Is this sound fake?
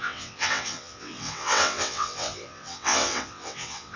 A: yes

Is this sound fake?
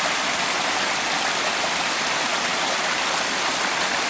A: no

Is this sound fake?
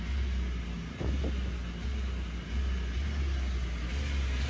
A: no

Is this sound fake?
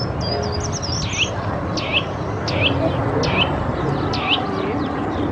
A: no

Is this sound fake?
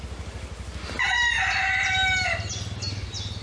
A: no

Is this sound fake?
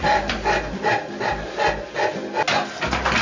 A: no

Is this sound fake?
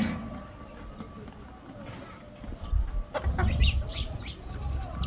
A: no